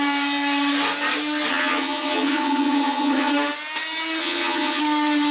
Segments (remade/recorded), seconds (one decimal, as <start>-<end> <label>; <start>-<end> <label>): 0.0-1.5 recorded; 1.5-3.3 remade; 3.3-4.2 recorded; 4.2-4.8 remade; 4.8-5.3 recorded